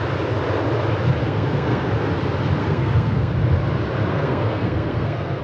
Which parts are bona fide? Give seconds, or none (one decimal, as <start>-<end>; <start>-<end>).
0.0-1.2; 1.9-2.6; 3.3-4.1

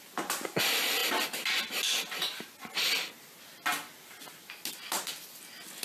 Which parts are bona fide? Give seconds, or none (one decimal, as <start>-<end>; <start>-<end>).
0.0-5.8

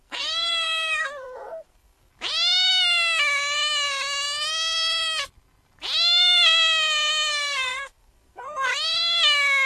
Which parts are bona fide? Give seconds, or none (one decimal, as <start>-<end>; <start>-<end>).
2.1-7.3; 8.7-9.7

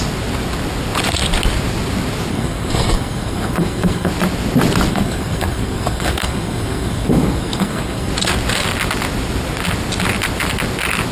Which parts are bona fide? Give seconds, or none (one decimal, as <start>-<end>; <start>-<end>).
0.0-2.3; 4.1-4.9; 8.1-11.1

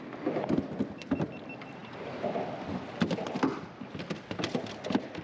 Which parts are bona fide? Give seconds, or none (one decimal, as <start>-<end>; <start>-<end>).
0.0-5.2

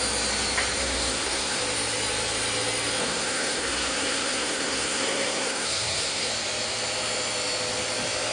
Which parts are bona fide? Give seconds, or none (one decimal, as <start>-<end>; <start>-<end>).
0.0-0.8; 1.6-3.0; 6.3-8.3